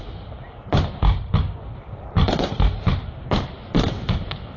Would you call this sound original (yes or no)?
yes